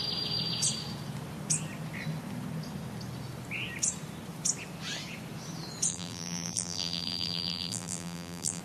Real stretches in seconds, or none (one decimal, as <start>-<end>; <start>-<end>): 0.0-5.9